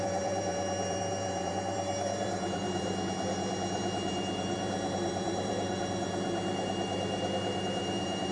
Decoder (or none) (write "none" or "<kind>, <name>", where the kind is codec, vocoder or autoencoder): vocoder, BigVGAN v2